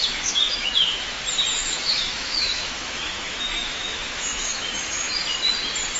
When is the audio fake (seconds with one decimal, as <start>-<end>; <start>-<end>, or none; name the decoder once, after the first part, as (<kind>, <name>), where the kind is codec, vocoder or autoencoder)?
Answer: 0.0-1.0 (autoencoder, DAC-VAE); 1.6-5.2